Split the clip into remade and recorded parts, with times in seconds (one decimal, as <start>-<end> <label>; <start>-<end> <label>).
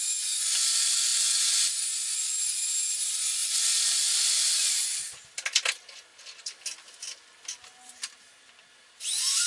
0.0-9.5 recorded